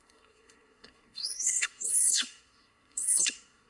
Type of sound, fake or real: fake